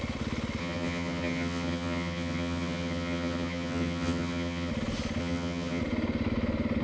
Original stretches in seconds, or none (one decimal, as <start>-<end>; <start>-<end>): 0.0-0.6; 4.7-5.2; 5.8-6.8